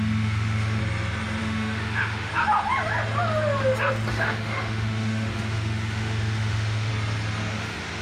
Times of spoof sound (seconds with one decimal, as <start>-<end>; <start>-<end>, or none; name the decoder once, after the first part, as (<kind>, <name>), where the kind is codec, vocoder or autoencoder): 0.0-0.8 (autoencoder, DAC-VAE); 1.4-2.3; 4.1-6.9; 7.5-8.0